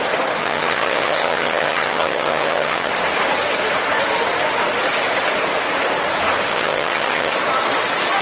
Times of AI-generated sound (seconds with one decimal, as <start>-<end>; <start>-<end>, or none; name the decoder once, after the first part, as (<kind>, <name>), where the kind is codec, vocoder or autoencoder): 0.4-2.9 (vocoder, HiFi-GAN); 6.5-7.3